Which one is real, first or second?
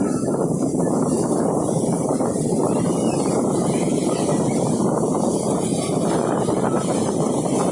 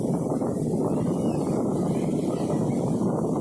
second